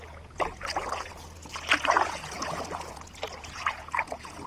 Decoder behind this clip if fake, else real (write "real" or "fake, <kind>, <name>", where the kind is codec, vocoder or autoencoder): fake, vocoder, Vocos